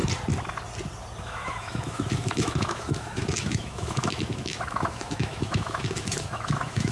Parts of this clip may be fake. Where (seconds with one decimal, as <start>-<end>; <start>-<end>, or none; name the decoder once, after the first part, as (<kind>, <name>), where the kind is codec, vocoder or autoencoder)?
1.2-6.9 (autoencoder, DAC-VAE)